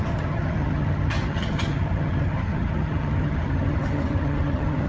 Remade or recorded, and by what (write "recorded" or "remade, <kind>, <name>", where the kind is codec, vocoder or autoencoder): remade, vocoder, HiFi-GAN